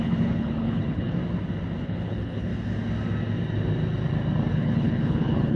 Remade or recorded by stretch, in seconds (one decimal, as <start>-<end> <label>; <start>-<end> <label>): 0.0-1.2 remade; 1.2-1.8 recorded; 1.8-2.5 remade; 2.5-4.5 recorded; 4.5-5.6 remade